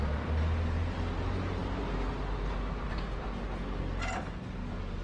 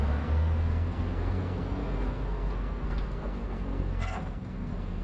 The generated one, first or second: second